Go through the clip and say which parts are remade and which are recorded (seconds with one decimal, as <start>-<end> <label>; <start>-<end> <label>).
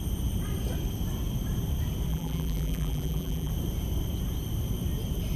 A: 0.0-2.1 recorded; 2.1-3.5 remade; 3.5-5.4 recorded